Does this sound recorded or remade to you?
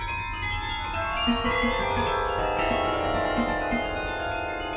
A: recorded